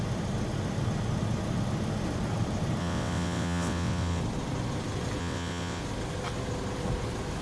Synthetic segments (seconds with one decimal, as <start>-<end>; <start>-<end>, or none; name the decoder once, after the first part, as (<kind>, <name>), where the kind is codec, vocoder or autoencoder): 2.8-4.2 (vocoder, WaveNeXt); 5.2-5.8